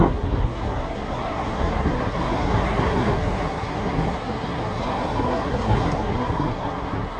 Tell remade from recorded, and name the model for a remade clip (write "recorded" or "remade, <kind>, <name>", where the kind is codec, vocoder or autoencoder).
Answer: remade, codec, SNAC